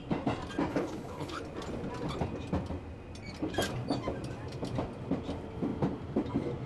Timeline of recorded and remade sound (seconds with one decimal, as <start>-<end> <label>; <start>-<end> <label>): 0.0-0.7 recorded; 0.7-1.4 remade; 1.4-6.7 recorded